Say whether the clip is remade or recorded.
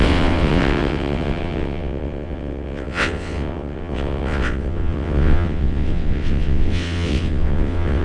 remade